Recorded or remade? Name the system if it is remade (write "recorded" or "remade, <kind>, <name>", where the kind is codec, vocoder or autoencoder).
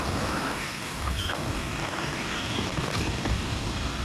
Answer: remade, codec, DAC